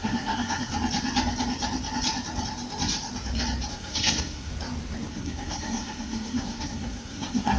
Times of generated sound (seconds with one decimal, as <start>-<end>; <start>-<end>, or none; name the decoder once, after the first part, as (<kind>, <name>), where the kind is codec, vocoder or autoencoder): 0.0-0.7 (codec, SNAC); 3.7-4.5; 5.1-7.6